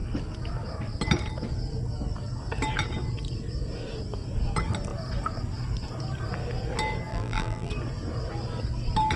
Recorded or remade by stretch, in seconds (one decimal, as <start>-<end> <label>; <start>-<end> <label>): 0.0-7.1 recorded; 7.1-7.7 remade; 7.7-9.2 recorded